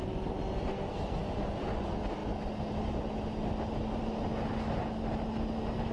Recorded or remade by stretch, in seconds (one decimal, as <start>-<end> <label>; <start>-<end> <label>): 0.0-0.7 recorded; 0.7-1.2 remade; 1.2-5.9 recorded